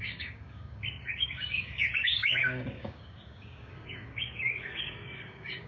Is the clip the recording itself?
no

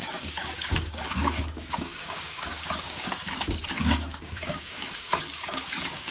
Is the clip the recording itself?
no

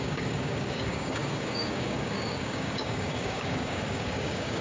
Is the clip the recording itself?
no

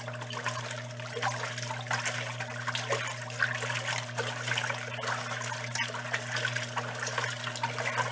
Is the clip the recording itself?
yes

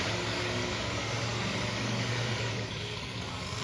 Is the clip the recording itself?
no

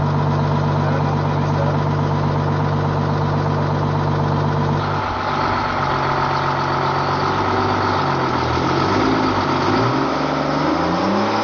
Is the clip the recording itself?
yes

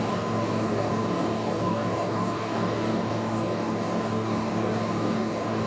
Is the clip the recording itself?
no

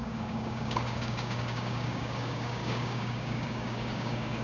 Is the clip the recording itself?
no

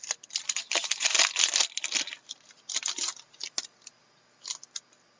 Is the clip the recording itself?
yes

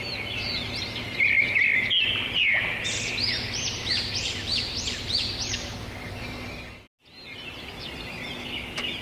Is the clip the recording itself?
yes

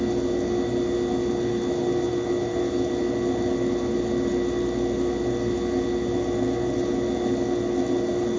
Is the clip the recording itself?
yes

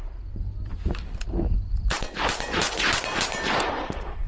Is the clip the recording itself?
yes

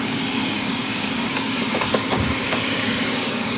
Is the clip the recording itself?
no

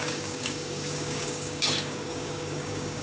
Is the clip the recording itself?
no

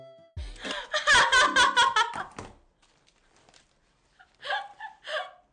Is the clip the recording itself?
yes